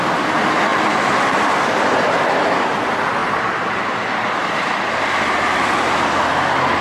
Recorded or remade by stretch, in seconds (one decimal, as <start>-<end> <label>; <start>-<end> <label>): 0.0-6.8 recorded